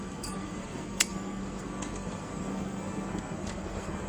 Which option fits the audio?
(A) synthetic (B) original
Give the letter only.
A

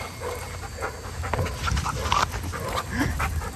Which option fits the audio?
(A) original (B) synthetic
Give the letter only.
A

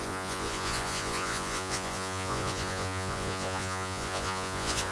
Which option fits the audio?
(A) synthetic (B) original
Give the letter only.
A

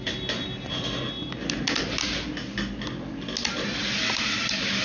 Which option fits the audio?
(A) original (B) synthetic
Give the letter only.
A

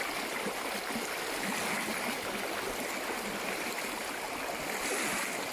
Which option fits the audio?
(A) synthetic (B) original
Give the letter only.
B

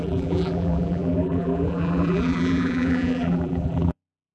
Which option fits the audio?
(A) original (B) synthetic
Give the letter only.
B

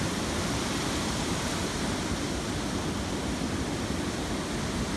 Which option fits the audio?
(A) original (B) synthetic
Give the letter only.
A